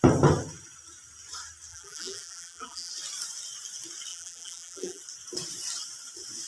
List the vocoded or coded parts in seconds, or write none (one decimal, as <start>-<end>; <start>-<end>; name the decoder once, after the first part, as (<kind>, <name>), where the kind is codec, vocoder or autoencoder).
1.7-2.9 (vocoder, BigVGAN v2); 4.1-5.0